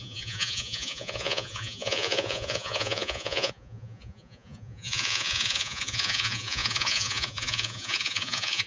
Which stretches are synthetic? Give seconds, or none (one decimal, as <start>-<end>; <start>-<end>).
0.0-8.7